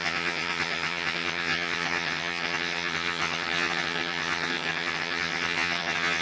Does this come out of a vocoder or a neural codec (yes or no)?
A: yes